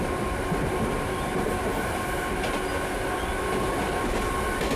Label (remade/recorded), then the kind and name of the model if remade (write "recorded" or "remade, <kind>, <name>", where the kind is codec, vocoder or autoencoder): recorded